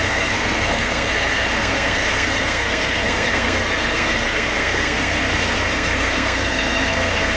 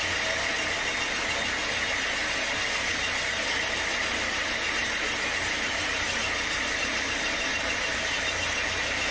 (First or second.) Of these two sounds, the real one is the second